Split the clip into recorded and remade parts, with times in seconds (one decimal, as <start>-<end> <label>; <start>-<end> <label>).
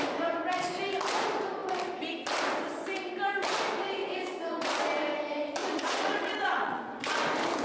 0.0-5.6 recorded; 5.6-6.8 remade; 6.8-7.6 recorded